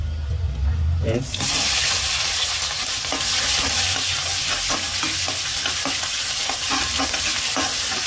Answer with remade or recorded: recorded